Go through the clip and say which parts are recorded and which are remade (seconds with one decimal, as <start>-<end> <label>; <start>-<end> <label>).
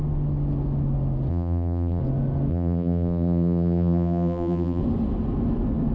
0.0-1.3 recorded; 1.3-2.0 remade; 2.0-2.5 recorded; 2.5-4.8 remade; 4.8-5.9 recorded